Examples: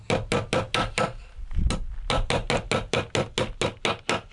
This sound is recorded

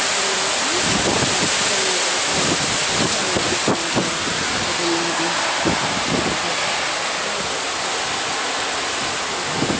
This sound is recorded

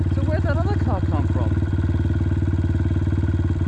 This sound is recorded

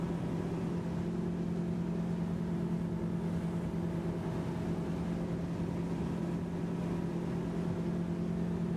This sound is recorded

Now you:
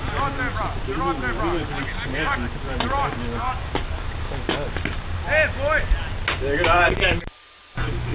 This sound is recorded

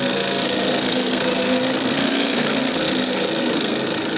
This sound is remade